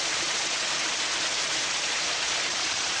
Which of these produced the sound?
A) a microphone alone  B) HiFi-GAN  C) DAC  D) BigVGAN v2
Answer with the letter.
D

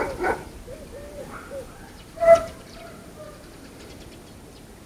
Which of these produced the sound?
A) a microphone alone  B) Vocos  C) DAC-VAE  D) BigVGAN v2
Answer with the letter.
D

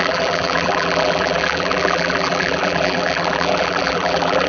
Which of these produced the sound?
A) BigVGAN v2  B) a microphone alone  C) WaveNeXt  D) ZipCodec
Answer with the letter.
A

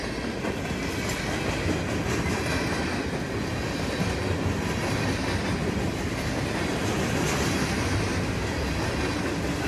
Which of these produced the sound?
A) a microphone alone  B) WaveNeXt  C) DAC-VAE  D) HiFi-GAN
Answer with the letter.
A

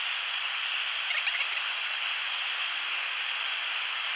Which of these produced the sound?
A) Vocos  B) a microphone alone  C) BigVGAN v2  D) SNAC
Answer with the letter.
B